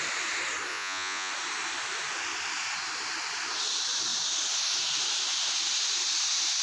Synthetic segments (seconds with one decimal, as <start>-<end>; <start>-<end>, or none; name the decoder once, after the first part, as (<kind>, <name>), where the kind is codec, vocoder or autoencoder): 0.7-1.3 (vocoder, Vocos)